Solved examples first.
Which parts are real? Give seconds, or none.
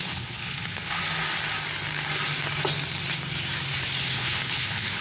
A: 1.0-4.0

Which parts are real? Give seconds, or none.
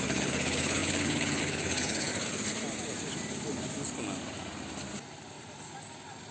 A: 2.1-6.3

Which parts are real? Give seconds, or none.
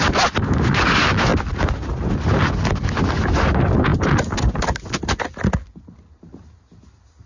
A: 0.0-7.3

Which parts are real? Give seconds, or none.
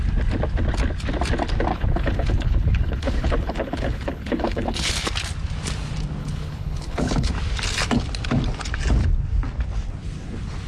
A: 0.0-1.7; 4.9-6.2; 7.3-10.7